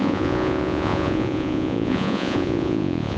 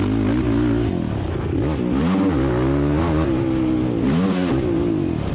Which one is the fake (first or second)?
first